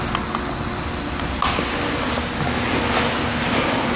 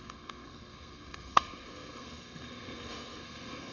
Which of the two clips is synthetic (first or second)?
second